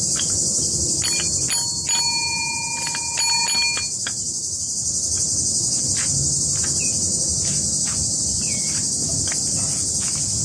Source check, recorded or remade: recorded